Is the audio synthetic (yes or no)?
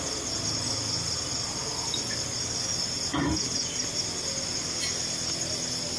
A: no